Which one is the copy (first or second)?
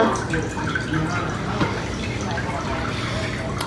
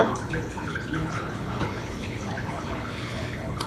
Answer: second